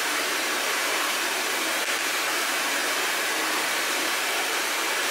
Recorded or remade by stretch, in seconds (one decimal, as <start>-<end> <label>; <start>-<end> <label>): 0.0-2.8 remade; 2.8-3.9 recorded; 3.9-5.1 remade